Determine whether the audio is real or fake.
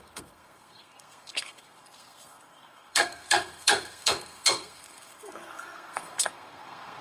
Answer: fake